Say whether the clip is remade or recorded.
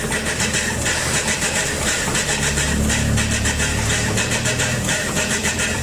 remade